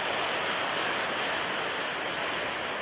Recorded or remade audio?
recorded